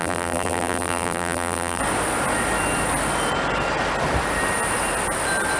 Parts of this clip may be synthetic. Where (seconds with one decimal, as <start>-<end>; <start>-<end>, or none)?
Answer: 0.0-1.8